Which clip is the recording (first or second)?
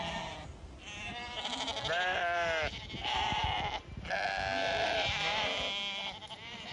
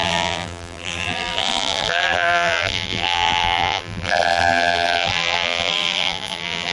first